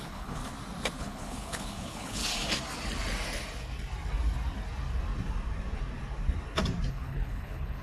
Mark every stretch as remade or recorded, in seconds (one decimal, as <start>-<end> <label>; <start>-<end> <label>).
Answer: 0.0-0.4 remade; 0.4-1.0 recorded; 1.0-2.2 remade; 2.2-6.9 recorded; 6.9-7.8 remade